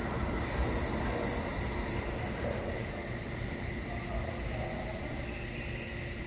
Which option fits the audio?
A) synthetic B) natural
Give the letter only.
B